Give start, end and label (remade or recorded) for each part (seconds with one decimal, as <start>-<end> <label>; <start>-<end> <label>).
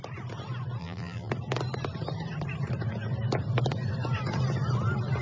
0.0-0.8 recorded; 0.8-1.3 remade; 1.3-5.2 recorded